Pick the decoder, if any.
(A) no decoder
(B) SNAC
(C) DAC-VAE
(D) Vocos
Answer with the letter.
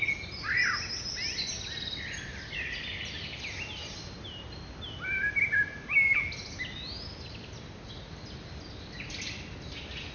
A